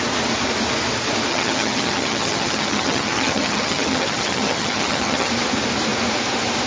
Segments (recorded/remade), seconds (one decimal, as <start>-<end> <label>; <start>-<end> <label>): 0.0-1.3 recorded; 1.3-5.3 remade; 5.3-6.7 recorded